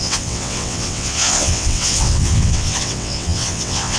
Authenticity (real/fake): fake